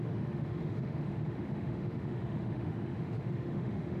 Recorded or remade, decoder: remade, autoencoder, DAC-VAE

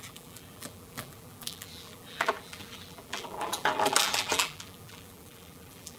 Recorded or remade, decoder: remade, vocoder, BigVGAN v2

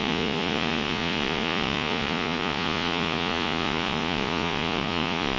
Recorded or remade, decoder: remade, vocoder, Vocos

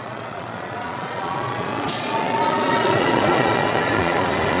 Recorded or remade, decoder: remade, vocoder, Vocos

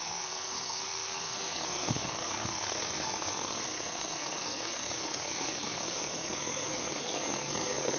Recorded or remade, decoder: remade, codec, SNAC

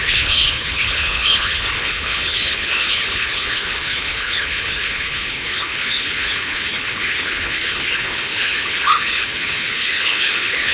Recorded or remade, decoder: remade, codec, HILCodec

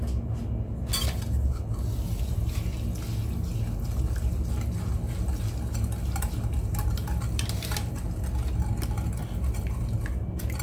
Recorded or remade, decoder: recorded